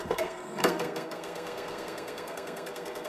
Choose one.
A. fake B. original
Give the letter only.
A